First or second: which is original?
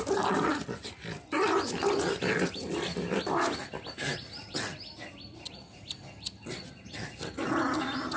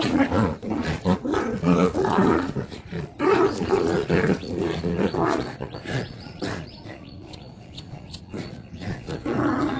first